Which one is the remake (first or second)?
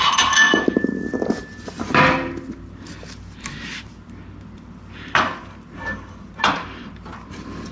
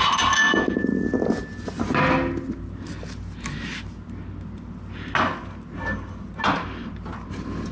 first